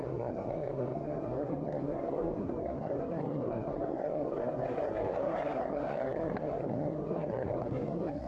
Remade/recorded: remade